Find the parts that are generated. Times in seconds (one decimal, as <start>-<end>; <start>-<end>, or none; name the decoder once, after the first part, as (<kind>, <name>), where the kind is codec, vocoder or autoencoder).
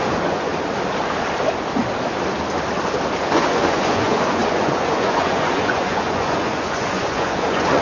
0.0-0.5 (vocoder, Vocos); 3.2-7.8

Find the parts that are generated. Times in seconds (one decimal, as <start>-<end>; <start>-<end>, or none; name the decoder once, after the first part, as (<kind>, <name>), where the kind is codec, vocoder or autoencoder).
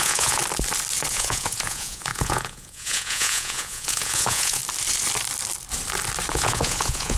0.0-0.4 (vocoder, Vocos); 1.1-4.6; 6.3-7.2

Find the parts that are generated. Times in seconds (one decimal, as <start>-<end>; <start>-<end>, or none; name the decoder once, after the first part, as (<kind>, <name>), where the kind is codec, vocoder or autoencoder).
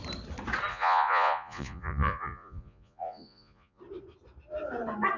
0.7-3.8 (vocoder, Vocos)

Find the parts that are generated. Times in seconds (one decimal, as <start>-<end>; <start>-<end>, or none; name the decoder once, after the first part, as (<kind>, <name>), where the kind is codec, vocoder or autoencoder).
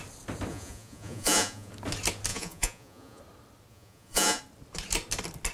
0.5-1.7 (vocoder, Vocos); 2.3-3.2; 3.7-4.4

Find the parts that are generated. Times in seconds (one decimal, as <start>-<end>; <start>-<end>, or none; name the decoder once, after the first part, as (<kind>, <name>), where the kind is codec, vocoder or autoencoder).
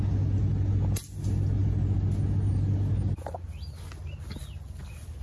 none